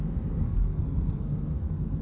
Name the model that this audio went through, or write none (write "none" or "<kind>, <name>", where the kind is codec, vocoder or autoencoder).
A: codec, SNAC